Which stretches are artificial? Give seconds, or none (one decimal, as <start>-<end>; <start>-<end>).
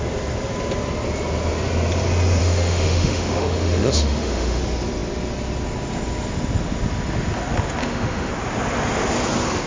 2.4-4.6; 7.8-8.3